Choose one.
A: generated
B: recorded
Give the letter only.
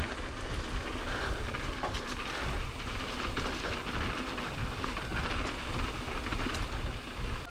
B